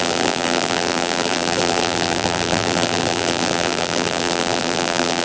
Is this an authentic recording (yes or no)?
no